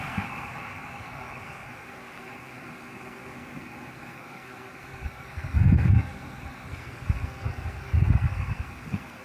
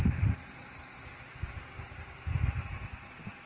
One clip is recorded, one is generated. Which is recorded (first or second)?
second